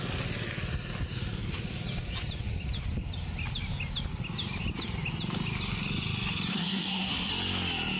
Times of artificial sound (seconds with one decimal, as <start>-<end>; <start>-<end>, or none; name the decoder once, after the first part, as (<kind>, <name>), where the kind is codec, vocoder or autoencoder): 6.5-7.3 (codec, SNAC)